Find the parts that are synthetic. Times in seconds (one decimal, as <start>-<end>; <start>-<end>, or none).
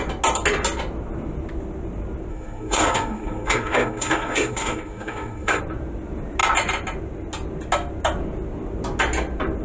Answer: 2.3-5.6